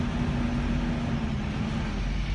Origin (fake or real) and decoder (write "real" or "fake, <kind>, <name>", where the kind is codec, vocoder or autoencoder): real